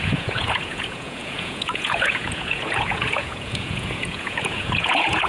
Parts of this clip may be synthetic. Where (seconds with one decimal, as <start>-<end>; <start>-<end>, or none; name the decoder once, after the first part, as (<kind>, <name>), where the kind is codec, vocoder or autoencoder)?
0.0-5.3 (vocoder, Vocos)